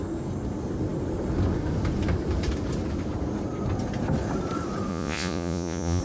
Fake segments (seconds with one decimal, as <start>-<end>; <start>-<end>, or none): 4.9-6.0